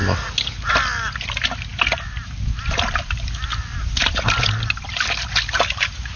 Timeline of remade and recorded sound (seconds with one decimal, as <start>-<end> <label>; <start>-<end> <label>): 0.0-6.2 recorded